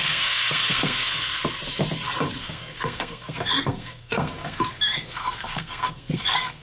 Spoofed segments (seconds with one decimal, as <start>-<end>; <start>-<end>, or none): 0.0-1.4; 2.4-6.6